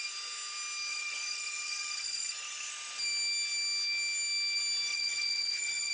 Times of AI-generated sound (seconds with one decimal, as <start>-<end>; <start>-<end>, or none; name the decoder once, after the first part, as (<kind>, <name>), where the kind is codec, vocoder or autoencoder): 0.9-2.7 (vocoder, HiFi-GAN); 4.9-5.9